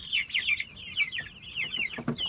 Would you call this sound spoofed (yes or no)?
no